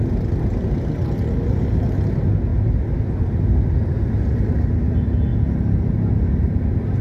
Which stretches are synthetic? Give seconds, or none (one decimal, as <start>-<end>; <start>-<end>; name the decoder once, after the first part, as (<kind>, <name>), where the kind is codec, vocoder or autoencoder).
none